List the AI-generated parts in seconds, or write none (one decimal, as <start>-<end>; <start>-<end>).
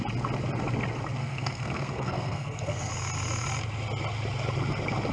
1.2-2.9